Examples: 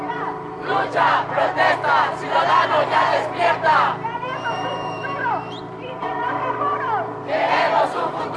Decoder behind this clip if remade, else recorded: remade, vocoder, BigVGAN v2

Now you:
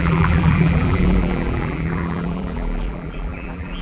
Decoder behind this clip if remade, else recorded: remade, vocoder, BigVGAN v2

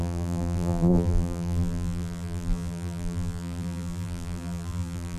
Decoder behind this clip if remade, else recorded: remade, vocoder, BigVGAN v2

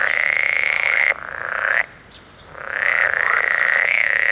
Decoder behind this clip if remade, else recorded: recorded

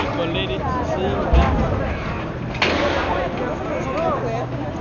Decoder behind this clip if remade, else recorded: recorded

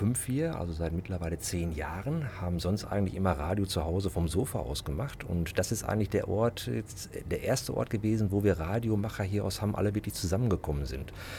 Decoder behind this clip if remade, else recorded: recorded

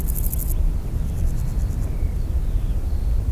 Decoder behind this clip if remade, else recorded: recorded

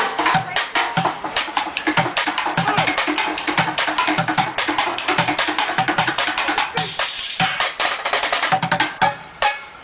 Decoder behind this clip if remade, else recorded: remade, vocoder, BigVGAN v2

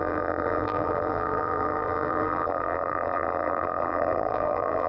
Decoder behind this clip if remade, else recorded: remade, vocoder, BigVGAN v2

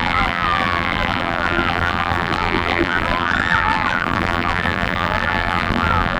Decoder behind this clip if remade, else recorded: remade, vocoder, BigVGAN v2